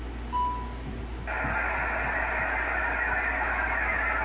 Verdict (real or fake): real